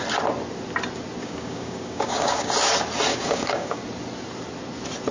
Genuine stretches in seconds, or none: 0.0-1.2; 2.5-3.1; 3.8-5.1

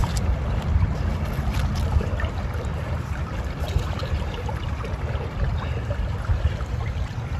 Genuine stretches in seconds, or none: 0.0-6.3; 7.0-7.4